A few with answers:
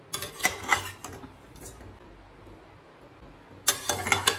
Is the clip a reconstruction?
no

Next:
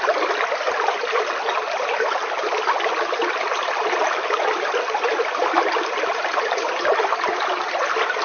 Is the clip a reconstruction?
no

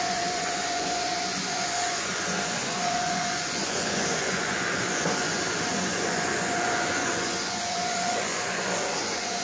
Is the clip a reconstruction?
yes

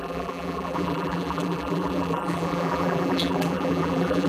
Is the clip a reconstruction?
yes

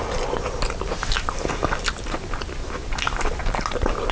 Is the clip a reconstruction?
no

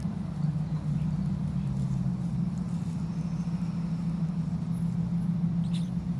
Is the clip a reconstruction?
no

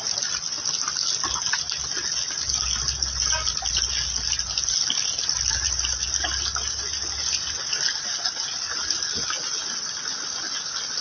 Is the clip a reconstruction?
no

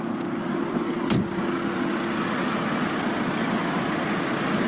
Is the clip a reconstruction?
no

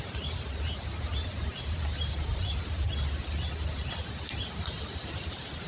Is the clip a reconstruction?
yes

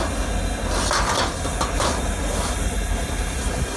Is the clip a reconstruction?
no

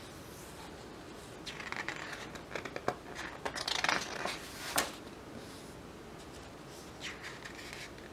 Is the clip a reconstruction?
no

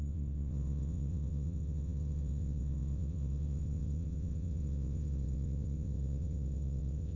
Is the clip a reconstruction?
yes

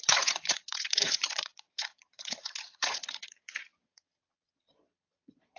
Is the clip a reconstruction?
yes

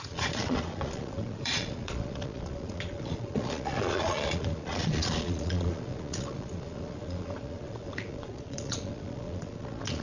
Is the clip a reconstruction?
yes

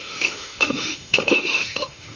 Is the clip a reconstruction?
yes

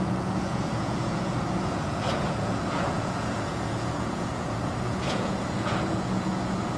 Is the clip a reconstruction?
yes